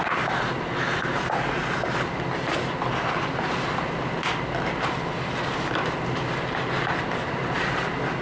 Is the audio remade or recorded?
recorded